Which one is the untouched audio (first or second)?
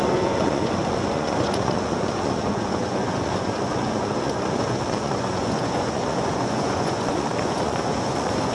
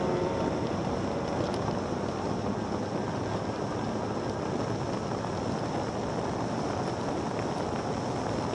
second